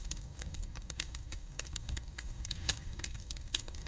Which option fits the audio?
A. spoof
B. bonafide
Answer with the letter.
A